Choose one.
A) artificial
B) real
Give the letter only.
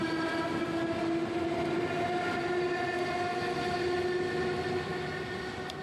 B